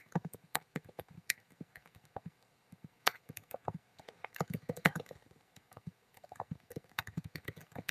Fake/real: fake